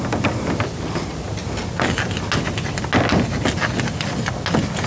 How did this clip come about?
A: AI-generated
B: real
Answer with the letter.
B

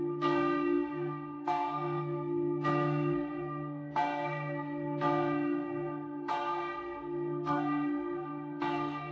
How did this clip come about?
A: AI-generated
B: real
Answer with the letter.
A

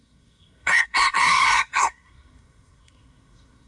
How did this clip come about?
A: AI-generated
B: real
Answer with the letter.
A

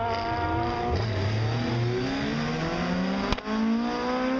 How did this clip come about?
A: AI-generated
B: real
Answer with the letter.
B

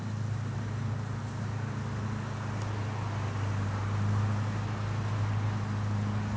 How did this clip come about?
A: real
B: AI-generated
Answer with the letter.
A